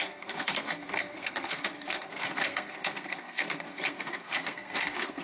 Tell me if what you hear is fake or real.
fake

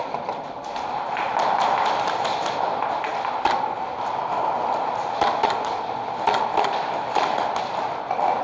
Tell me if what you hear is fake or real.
real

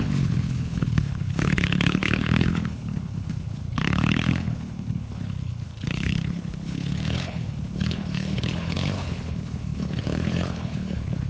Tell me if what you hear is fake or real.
fake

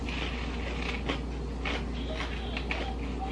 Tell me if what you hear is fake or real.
real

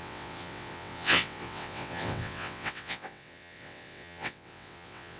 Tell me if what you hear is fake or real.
fake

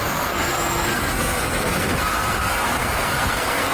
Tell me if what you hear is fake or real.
fake